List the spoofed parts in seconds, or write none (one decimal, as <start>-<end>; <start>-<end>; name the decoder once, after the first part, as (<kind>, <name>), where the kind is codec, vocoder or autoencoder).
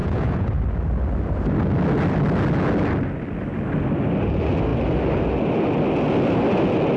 0.0-0.6 (vocoder, Vocos)